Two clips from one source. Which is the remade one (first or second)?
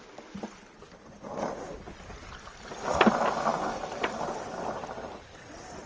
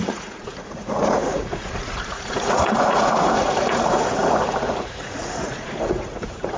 second